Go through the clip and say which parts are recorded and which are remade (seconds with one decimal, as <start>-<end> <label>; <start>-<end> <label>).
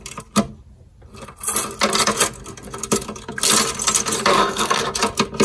0.0-4.3 recorded; 4.3-4.8 remade; 4.8-5.4 recorded